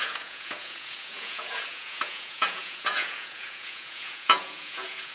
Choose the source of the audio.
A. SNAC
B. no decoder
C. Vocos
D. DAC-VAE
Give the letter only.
C